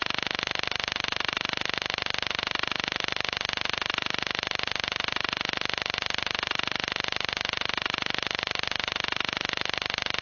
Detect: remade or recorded remade